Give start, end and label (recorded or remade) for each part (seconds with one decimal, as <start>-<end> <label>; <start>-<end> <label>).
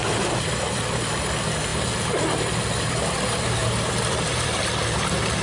0.0-1.2 remade; 1.2-1.7 recorded; 1.7-2.9 remade; 2.9-3.6 recorded; 3.6-4.6 remade; 4.6-5.4 recorded